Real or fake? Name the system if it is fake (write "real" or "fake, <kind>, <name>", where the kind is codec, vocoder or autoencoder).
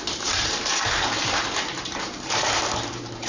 fake, vocoder, BigVGAN v2